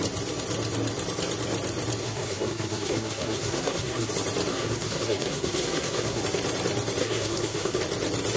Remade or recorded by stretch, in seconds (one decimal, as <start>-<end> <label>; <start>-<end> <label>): 0.0-2.0 recorded; 2.0-4.1 remade; 4.1-4.5 recorded; 4.5-6.2 remade; 6.2-7.0 recorded; 7.0-7.8 remade; 7.8-8.4 recorded